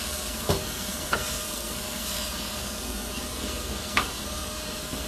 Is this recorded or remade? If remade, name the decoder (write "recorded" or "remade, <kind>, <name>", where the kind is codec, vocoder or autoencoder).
remade, codec, SNAC